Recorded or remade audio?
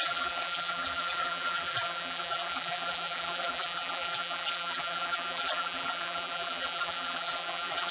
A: remade